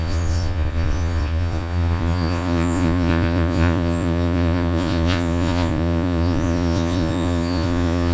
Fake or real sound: fake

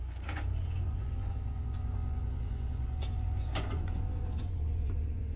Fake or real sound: fake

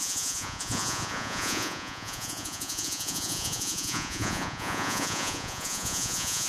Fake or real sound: fake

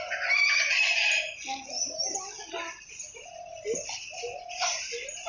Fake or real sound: real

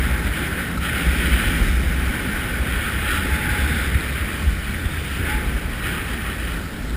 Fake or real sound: real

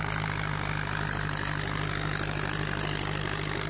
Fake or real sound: real